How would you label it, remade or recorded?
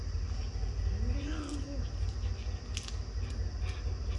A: recorded